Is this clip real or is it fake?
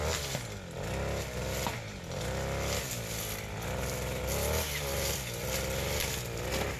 real